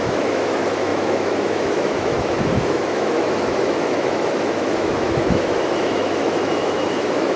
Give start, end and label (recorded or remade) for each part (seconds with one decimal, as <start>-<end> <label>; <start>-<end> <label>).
0.0-7.4 remade